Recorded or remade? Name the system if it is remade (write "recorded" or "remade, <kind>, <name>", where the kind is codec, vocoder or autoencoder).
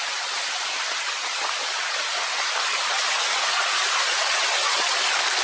recorded